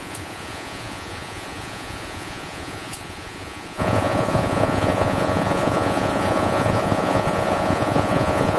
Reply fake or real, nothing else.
fake